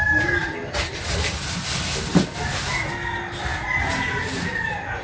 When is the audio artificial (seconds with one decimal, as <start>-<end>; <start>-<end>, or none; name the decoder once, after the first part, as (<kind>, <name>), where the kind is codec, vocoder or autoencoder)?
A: none